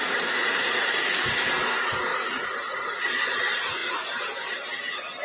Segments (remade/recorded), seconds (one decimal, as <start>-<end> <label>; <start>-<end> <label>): 0.0-0.4 recorded; 0.4-1.2 remade; 1.2-2.1 recorded; 2.1-3.0 remade; 3.0-5.2 recorded